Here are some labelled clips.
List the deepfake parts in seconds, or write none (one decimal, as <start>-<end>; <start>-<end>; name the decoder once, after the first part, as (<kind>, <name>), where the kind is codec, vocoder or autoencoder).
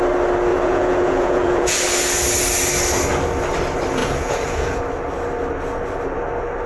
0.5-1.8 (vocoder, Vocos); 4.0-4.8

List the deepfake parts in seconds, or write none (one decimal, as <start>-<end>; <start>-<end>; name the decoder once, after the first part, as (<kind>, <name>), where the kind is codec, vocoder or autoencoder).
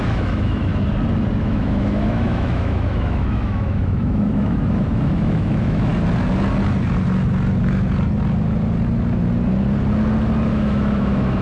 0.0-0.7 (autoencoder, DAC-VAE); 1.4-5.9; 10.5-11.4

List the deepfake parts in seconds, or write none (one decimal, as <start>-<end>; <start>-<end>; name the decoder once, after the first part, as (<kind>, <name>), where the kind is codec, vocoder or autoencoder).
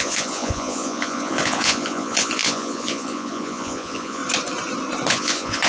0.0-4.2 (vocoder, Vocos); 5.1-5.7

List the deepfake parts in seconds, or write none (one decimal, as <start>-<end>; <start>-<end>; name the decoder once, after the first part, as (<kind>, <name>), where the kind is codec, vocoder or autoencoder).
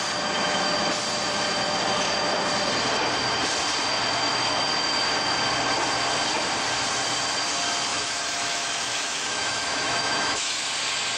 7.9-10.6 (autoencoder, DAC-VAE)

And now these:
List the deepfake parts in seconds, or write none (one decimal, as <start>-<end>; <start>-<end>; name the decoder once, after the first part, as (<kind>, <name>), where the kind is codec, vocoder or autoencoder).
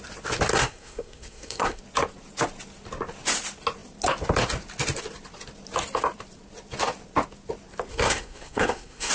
0.5-1.8 (codec, SNAC); 7.9-9.1